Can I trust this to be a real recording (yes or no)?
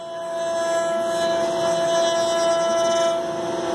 yes